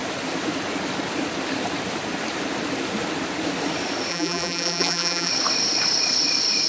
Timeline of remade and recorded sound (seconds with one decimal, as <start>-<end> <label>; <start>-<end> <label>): 0.0-4.1 recorded; 4.1-5.3 remade; 5.3-6.7 recorded